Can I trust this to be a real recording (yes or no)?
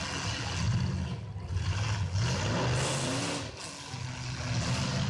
yes